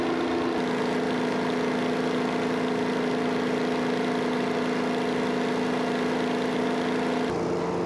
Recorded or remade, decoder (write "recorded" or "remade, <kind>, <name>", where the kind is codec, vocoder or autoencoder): recorded